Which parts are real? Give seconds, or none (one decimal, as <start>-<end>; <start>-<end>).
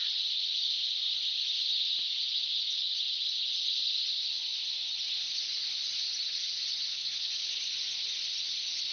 0.0-6.9; 7.6-8.9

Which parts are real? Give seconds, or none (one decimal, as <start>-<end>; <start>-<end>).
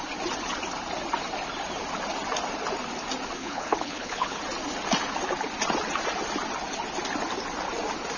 0.0-3.4; 4.4-8.2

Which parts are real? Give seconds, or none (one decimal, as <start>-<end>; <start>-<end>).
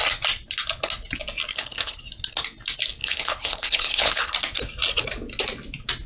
0.0-1.5; 2.0-3.0; 4.3-6.1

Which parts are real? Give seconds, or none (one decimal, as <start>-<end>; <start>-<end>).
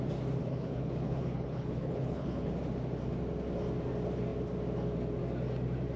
0.0-0.4; 2.5-6.0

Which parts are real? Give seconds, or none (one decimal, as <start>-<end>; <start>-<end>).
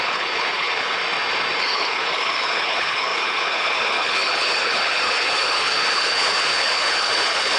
1.0-1.6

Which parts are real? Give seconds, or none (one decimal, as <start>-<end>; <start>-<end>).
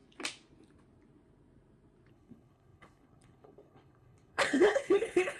0.0-2.1